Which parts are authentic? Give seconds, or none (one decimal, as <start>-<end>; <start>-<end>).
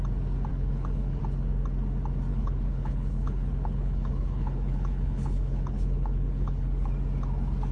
0.0-0.5; 1.2-2.3; 6.9-7.7